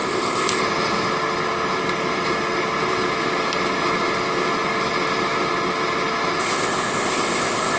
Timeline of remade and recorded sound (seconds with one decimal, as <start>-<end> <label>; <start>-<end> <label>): 0.0-0.6 remade; 0.6-6.4 recorded; 6.4-7.8 remade